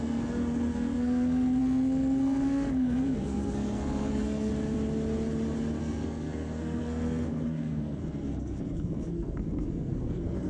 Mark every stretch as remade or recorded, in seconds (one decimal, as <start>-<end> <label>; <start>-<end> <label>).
0.0-4.5 remade; 4.5-5.8 recorded; 5.8-10.5 remade